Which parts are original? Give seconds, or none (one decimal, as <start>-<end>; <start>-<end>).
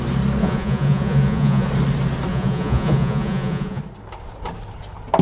0.0-0.4; 1.7-2.3; 3.8-5.2